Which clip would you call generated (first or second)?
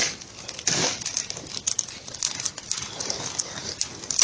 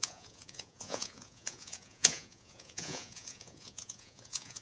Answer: second